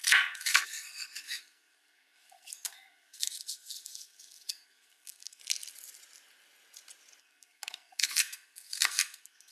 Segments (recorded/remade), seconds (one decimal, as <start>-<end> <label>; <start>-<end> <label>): 0.0-5.4 remade; 5.4-7.2 recorded; 7.2-9.5 remade